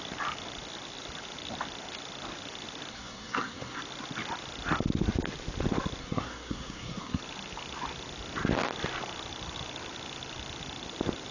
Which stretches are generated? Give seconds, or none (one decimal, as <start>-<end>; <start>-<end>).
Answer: 2.9-3.8; 6.0-7.2